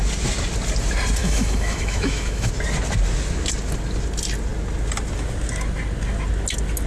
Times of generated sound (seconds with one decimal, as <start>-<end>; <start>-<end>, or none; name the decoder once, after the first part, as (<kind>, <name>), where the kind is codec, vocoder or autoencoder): 1.2-2.5 (autoencoder, DAC-VAE)